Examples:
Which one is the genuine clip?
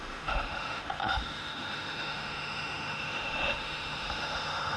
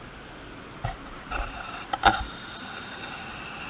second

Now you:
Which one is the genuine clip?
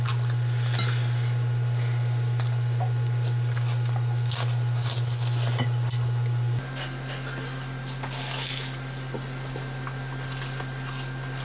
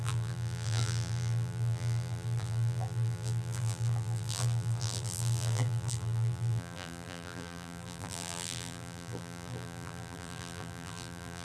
first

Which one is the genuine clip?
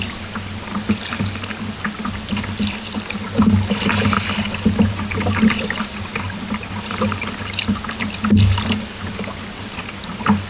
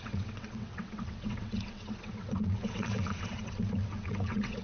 first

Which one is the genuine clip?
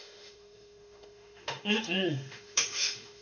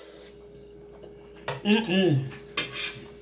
second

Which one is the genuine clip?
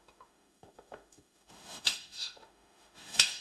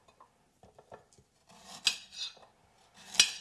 second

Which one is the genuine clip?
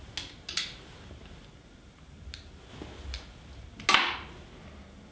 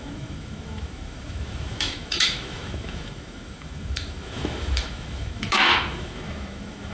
first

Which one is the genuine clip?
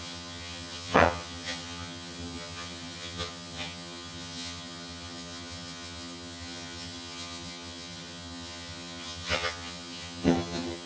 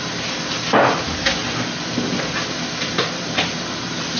second